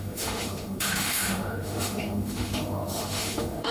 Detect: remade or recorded remade